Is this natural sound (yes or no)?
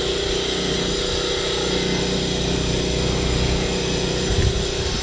yes